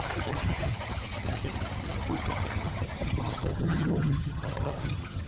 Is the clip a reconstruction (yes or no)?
yes